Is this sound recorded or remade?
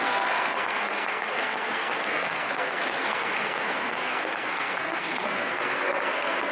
remade